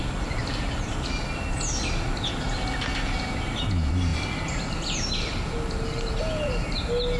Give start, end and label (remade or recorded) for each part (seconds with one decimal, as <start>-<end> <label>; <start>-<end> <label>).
0.0-7.2 recorded